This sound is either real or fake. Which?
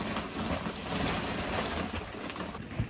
real